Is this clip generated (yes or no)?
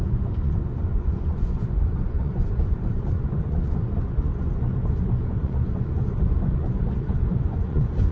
yes